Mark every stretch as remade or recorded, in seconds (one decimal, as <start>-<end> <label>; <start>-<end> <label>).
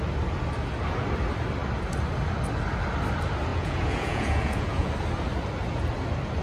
0.0-3.5 recorded; 3.5-4.9 remade; 4.9-6.4 recorded